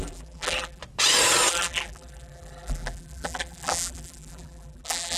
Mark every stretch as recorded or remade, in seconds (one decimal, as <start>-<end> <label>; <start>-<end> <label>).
0.0-0.8 remade; 0.8-1.5 recorded; 1.5-5.2 remade